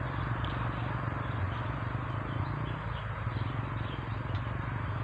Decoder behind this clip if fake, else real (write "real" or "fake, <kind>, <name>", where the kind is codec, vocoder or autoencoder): real